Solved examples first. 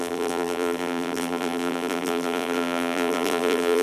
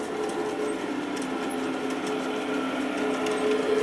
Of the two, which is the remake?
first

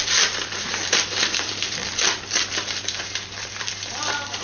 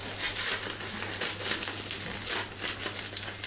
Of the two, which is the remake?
first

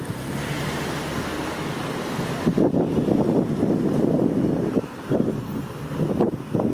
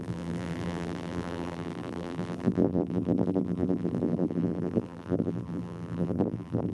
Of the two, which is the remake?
second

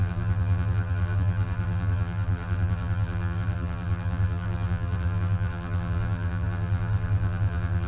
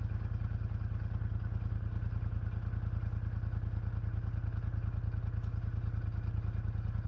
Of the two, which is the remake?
first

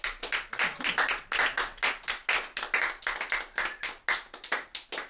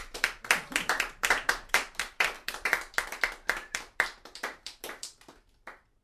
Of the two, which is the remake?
second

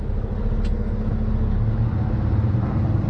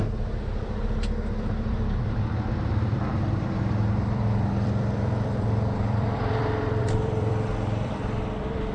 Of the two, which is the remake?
second